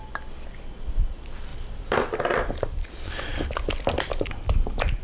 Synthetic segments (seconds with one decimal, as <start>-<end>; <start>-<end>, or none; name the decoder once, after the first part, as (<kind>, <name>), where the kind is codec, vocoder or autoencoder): 1.5-4.3 (vocoder, BigVGAN v2)